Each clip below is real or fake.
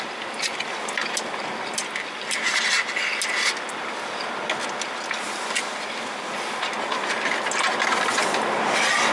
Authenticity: real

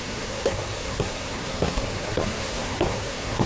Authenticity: fake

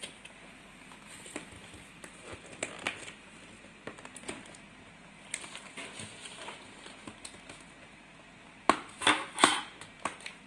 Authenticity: real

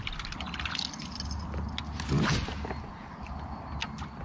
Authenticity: real